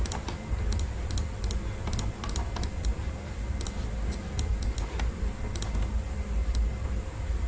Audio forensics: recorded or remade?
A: recorded